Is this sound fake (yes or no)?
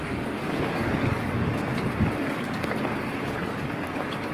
yes